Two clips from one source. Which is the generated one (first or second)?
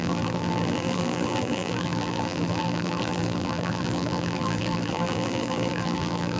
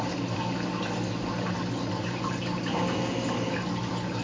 first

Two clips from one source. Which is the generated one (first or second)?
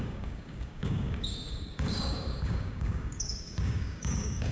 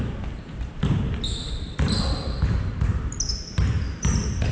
first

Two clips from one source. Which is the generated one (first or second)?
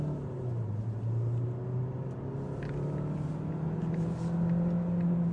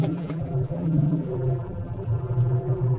second